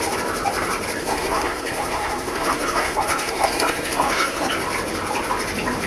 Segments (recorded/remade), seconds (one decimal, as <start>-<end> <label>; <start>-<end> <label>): 0.0-1.0 recorded; 1.0-4.5 remade; 4.5-5.9 recorded